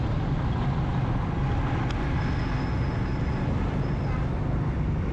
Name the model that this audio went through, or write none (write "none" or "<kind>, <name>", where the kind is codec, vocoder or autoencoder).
none